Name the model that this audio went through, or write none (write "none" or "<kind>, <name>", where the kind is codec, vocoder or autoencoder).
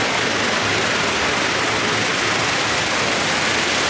none